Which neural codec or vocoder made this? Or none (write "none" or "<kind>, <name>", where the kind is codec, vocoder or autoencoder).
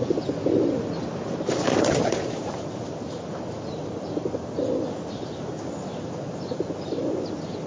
none